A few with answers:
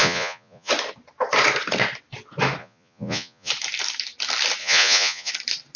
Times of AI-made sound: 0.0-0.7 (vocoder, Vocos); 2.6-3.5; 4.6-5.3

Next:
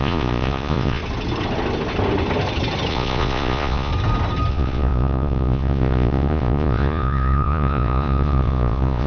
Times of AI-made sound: 0.0-1.0 (vocoder, Vocos); 2.9-3.9; 4.5-9.1

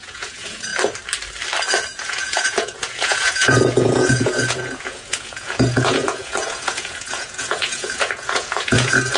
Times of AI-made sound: 0.0-0.7 (vocoder, Vocos); 2.0-9.2